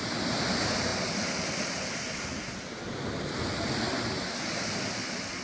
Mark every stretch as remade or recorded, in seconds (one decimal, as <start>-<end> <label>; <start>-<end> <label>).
0.0-5.4 recorded